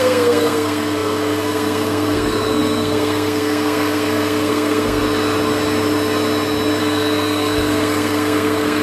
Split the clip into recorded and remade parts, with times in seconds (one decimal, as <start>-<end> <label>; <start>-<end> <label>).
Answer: 0.0-5.0 remade; 5.0-6.8 recorded; 6.8-8.8 remade